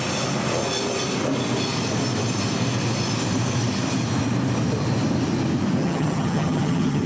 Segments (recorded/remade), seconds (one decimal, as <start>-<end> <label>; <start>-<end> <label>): 0.0-5.8 recorded; 5.8-7.1 remade